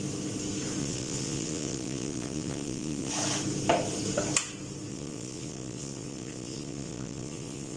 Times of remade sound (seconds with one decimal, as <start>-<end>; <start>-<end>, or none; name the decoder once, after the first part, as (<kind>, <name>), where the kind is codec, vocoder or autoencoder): 0.8-3.1 (vocoder, Vocos); 4.9-7.8

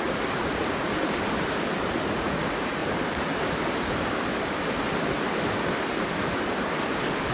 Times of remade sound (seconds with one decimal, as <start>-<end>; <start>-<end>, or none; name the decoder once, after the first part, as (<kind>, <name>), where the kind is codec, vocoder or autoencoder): 0.0-0.9 (vocoder, Vocos); 2.2-2.8

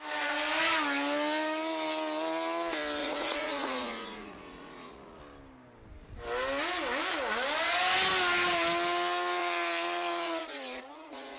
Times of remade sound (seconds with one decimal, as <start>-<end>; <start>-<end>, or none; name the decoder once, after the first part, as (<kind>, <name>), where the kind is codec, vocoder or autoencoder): 3.0-5.2 (vocoder, Vocos); 9.4-11.4

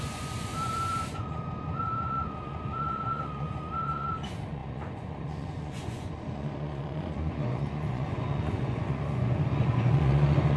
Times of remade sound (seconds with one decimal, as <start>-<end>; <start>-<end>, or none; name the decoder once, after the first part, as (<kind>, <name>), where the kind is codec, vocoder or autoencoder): 0.0-10.6 (vocoder, Vocos)

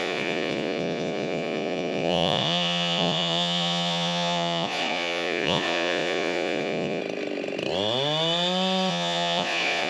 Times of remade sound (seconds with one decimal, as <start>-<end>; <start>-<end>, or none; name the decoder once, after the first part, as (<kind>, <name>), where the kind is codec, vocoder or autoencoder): 0.0-7.0 (vocoder, Vocos); 8.9-9.9

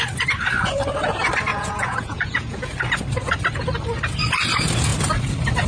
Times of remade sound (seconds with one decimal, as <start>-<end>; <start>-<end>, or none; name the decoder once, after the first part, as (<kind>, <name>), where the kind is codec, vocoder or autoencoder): 1.5-2.7 (vocoder, Vocos)